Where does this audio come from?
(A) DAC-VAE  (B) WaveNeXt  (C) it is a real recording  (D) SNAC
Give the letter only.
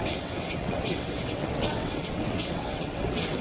B